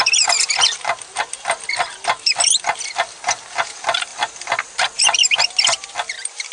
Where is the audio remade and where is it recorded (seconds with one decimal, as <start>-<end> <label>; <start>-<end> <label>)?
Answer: 0.0-1.3 remade; 1.3-2.3 recorded; 2.3-6.5 remade